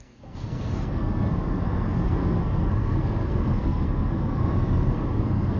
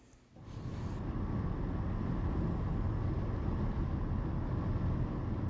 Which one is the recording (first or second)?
second